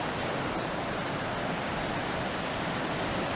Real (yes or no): no